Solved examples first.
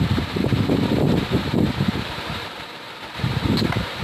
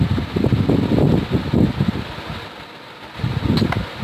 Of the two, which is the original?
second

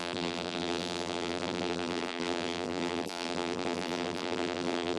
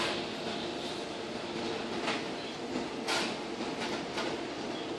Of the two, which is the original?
second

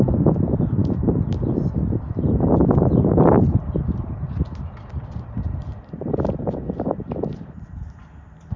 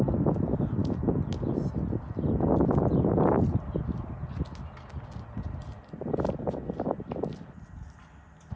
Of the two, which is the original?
second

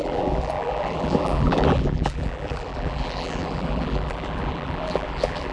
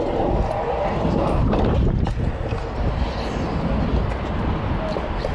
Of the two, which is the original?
second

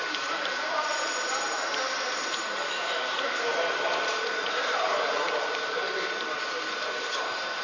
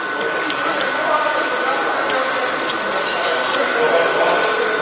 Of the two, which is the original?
second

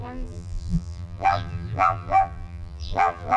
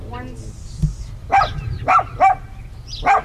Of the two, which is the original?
second